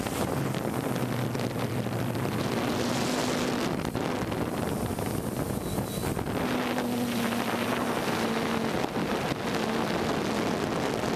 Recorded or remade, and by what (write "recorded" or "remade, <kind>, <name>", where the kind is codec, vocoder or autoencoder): recorded